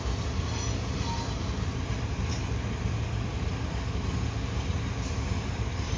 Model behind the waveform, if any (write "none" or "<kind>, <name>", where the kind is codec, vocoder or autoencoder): none